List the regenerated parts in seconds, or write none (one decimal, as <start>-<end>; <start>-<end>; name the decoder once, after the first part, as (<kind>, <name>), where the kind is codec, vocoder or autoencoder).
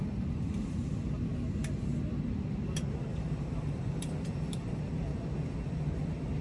0.0-1.0 (vocoder, BigVGAN v2); 3.1-4.8